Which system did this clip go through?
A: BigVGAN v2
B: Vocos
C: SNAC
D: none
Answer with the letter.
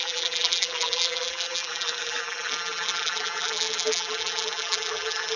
A